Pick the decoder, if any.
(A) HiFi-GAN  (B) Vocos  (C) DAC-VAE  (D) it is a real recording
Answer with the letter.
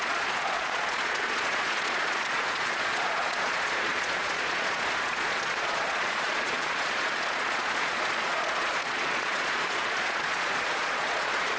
B